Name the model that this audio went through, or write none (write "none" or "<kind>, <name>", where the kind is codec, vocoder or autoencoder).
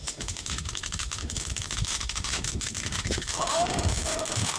autoencoder, DAC-VAE